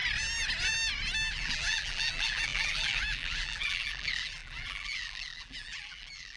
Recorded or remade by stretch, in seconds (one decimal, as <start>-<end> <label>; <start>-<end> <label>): 0.0-1.3 recorded; 1.3-6.4 remade